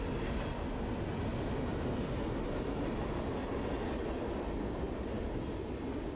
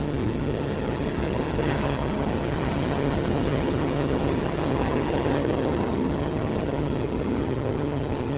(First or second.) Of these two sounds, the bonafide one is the first